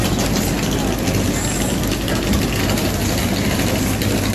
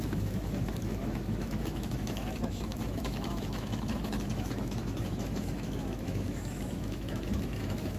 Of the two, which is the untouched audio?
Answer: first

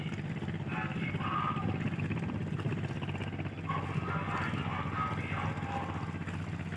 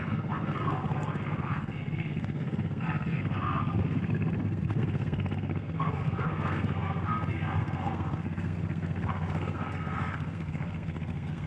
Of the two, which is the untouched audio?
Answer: first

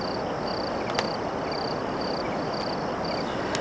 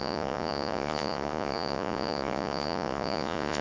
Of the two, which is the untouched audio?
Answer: first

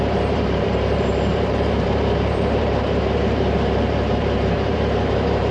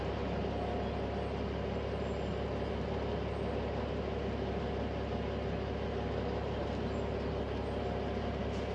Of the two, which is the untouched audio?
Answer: second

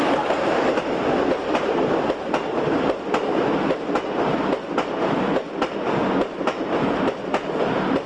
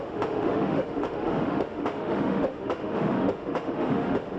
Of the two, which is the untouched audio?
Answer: first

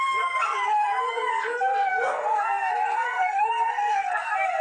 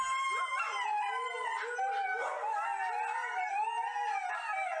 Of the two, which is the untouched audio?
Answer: second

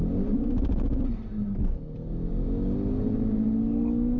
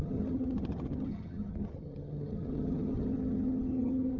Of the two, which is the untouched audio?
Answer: first